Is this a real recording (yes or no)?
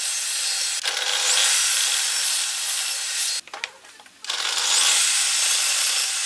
yes